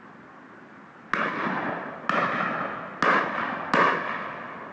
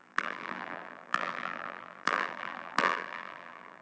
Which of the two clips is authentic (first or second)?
first